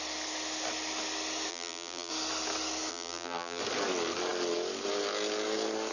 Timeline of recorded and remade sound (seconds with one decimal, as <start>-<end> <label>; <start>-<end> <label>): 0.0-1.5 recorded; 1.5-2.1 remade; 2.1-2.9 recorded; 2.9-3.6 remade; 3.6-5.9 recorded